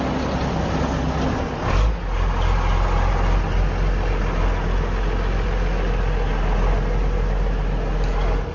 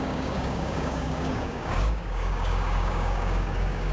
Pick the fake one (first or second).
second